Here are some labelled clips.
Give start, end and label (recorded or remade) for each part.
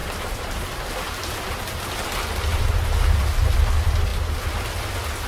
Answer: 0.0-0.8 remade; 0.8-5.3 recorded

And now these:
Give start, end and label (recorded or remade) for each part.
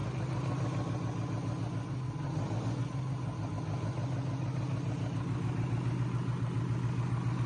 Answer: 0.0-7.5 recorded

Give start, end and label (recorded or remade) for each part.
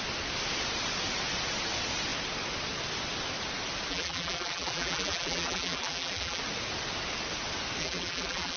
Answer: 0.0-3.9 recorded; 3.9-6.4 remade; 6.4-7.8 recorded; 7.8-8.6 remade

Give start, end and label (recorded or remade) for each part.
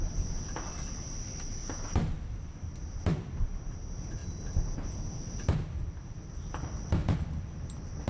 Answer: 0.0-1.6 recorded; 1.6-3.6 remade; 3.6-8.1 recorded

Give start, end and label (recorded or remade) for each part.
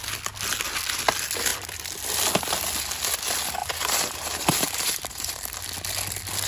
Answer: 0.0-3.6 recorded; 3.6-5.6 remade; 5.6-6.5 recorded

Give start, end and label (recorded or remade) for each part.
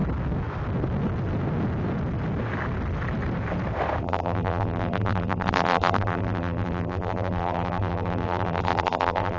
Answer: 0.0-4.0 recorded; 4.0-9.4 remade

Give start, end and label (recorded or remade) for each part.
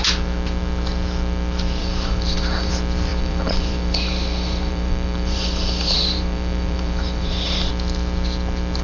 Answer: 0.0-1.8 recorded; 1.8-2.7 remade; 2.7-3.1 recorded; 3.1-7.7 remade; 7.7-8.8 recorded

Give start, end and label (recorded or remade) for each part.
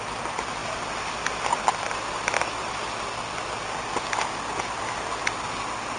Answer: 0.0-6.0 recorded